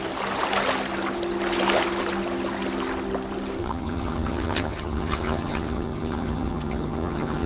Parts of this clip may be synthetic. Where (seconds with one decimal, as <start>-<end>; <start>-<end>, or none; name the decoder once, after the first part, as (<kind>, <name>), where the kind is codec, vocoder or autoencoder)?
3.6-7.5 (vocoder, HiFi-GAN)